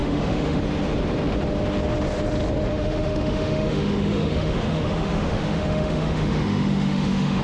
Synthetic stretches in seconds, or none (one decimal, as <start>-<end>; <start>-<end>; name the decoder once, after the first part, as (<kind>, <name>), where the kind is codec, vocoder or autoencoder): 0.0-0.6 (autoencoder, DAC-VAE); 2.7-7.4